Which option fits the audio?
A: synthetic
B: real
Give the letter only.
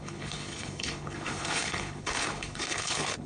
A